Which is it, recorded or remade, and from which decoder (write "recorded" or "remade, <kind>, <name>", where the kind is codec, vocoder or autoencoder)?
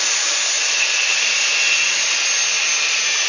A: recorded